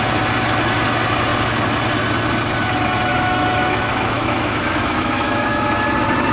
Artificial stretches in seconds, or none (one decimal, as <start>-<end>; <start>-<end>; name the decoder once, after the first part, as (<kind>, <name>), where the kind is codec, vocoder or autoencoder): 3.1-5.7 (autoencoder, DAC-VAE)